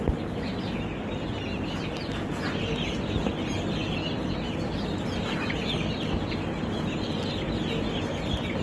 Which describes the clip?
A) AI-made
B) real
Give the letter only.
B